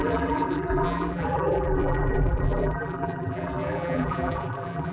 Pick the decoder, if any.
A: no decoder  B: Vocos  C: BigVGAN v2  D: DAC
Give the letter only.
C